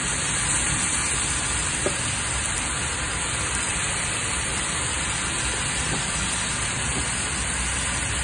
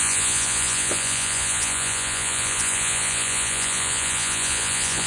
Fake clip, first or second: second